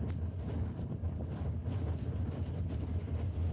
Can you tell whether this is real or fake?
real